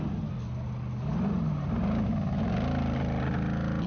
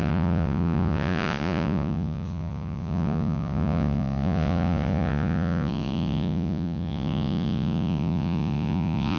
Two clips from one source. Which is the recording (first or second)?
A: first